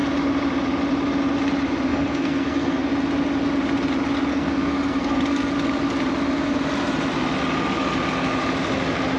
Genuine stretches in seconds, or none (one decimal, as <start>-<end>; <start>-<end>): 0.0-1.9; 2.9-4.3; 5.5-9.2